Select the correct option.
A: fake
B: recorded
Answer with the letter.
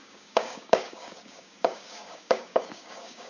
A